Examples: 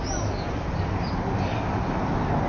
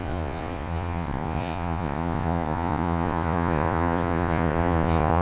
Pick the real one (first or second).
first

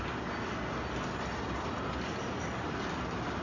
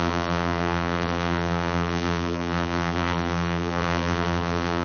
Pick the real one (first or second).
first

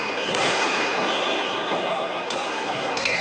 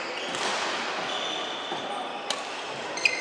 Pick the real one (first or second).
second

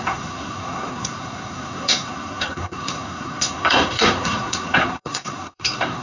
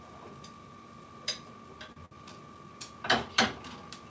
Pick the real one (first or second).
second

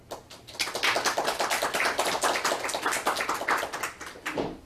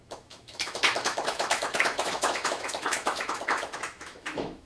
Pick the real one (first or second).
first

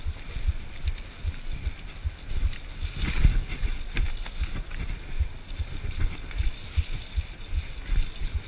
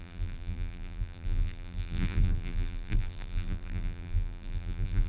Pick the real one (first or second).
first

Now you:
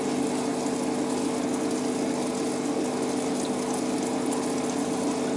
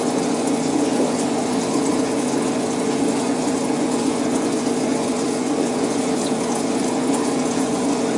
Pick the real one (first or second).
first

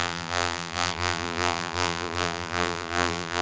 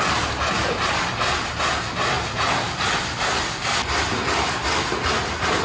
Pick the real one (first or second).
second